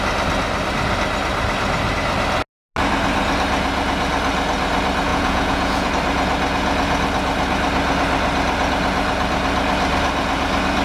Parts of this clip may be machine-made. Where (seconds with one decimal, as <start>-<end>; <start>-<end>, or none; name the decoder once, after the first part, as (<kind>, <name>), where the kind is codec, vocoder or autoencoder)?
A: 5.1-5.9 (vocoder, Vocos)